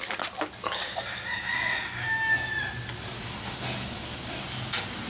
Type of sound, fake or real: real